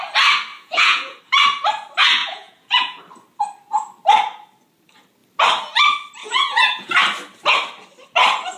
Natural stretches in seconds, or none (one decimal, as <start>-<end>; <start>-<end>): 0.0-0.5; 1.2-2.2; 3.0-6.2; 6.9-8.6